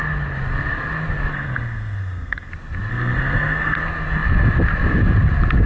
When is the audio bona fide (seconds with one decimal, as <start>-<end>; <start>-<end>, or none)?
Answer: 0.0-1.3; 2.5-2.9; 3.8-5.7